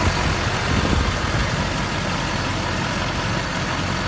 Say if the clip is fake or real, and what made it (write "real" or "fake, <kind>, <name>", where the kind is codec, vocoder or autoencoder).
real